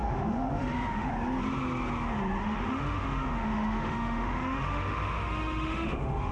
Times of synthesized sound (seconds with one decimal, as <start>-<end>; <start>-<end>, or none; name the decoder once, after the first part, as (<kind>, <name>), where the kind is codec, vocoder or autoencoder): 0.0-1.1 (autoencoder, DAC-VAE); 2.4-6.3

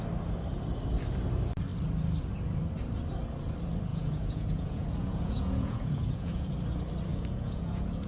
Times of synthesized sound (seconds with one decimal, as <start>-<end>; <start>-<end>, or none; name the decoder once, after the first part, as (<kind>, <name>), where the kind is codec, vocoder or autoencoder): 3.9-6.5 (vocoder, Vocos); 7.1-8.1

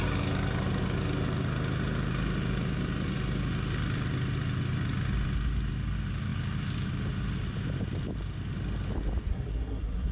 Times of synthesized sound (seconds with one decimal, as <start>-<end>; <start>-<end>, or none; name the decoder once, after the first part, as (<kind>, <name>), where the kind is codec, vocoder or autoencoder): 9.3-10.1 (codec, SNAC)

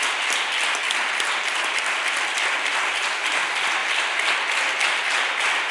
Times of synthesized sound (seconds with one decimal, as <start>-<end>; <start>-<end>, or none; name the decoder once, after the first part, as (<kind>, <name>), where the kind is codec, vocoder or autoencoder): none

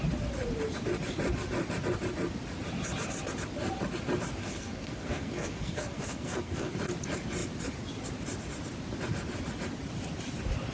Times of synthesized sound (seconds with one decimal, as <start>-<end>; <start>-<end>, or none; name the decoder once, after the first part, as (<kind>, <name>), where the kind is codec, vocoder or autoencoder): 4.4-6.7 (codec, SNAC)

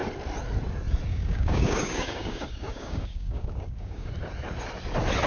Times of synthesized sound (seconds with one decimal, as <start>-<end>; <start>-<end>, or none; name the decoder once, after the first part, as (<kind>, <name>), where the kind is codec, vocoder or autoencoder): 1.1-4.1 (codec, DAC)